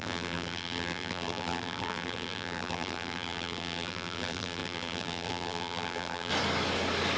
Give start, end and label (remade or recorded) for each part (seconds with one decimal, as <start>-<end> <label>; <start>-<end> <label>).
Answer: 0.0-6.3 remade; 6.3-7.2 recorded